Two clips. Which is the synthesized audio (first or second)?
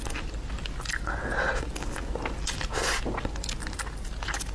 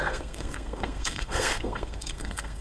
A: second